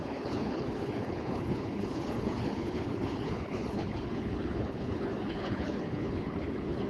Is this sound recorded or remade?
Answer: remade